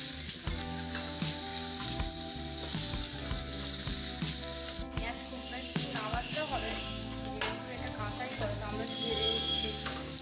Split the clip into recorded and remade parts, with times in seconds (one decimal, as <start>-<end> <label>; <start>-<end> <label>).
0.0-5.7 recorded; 5.7-7.3 remade; 7.3-9.3 recorded; 9.3-10.2 remade